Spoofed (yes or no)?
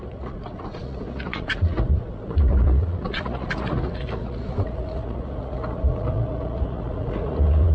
yes